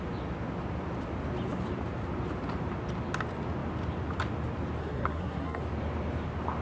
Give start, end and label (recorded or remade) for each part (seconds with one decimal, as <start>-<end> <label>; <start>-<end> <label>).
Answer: 0.0-4.8 recorded; 4.8-5.6 remade; 5.6-6.6 recorded